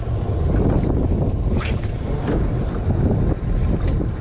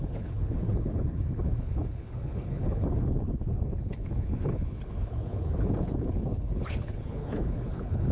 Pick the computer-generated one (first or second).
second